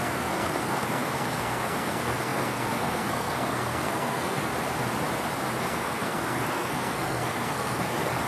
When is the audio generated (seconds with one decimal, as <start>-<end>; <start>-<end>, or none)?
0.0-4.5; 5.6-8.3